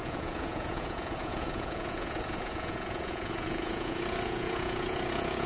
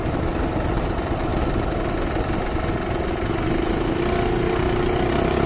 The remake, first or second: first